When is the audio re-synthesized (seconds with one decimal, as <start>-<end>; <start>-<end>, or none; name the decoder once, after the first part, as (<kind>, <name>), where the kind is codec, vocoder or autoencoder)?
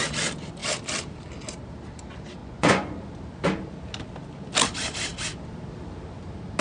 2.4-3.0 (vocoder, Vocos)